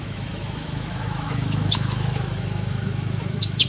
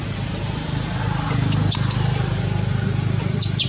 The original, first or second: second